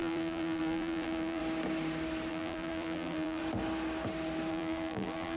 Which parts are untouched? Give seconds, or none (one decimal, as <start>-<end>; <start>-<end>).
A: 1.4-2.3; 3.4-4.5